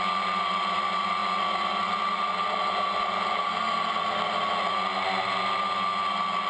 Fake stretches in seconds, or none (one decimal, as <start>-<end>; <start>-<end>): none